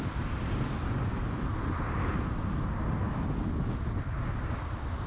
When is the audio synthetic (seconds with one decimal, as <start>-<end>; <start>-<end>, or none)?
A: 0.0-1.5; 4.6-5.1